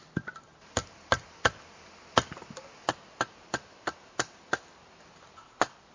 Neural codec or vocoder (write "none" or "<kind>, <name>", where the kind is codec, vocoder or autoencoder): none